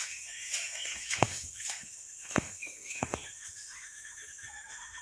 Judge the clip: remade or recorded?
remade